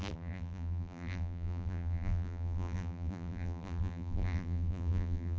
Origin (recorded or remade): remade